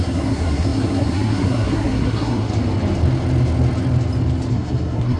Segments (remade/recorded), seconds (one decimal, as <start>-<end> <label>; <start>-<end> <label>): 0.0-2.5 remade; 2.5-4.5 recorded; 4.5-5.2 remade